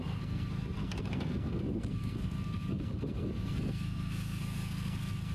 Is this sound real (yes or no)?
no